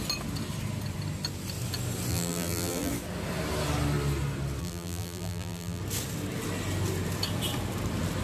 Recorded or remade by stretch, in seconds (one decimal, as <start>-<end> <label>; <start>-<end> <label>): 0.0-2.1 recorded; 2.1-2.9 remade; 2.9-4.6 recorded; 4.6-5.8 remade; 5.8-8.2 recorded